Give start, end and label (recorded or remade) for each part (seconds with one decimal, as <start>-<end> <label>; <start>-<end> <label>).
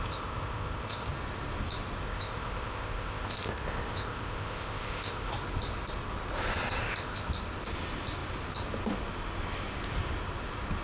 0.0-1.1 remade; 1.1-2.1 recorded; 2.1-5.3 remade; 5.3-6.8 recorded; 6.8-7.3 remade; 7.3-10.8 recorded